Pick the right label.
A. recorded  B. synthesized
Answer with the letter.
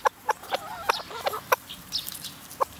A